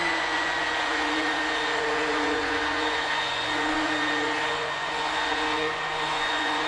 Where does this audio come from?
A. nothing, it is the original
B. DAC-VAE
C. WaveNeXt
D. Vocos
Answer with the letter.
D